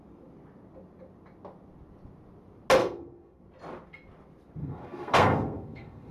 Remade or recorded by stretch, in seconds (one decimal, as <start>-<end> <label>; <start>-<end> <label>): 0.0-2.8 recorded; 2.8-3.4 remade; 3.4-4.6 recorded; 4.6-6.1 remade